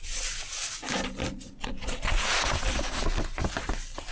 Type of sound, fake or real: real